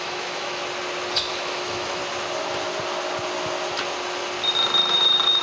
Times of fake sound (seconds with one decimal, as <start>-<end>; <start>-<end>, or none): 0.0-0.6; 1.3-2.0